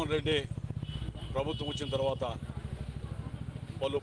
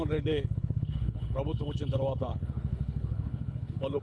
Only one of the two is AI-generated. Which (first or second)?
second